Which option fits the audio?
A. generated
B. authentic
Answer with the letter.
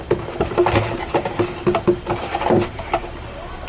A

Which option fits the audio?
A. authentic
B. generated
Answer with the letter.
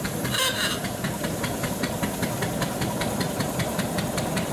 B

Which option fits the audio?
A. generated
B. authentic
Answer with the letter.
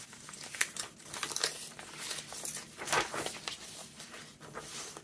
B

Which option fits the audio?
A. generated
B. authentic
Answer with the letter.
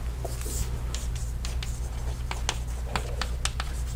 B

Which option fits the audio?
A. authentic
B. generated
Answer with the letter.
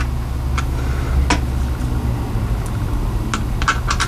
A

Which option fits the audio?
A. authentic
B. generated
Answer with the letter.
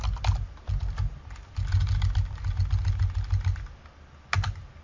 A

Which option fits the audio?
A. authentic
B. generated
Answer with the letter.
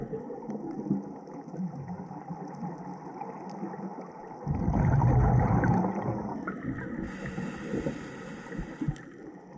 A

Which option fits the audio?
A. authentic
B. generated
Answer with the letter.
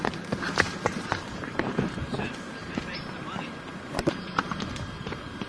B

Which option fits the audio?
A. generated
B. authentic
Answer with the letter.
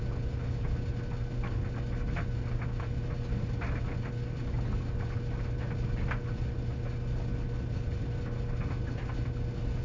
B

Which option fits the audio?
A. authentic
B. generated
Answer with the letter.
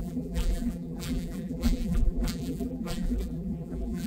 B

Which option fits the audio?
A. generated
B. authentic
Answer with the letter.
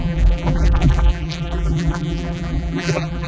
A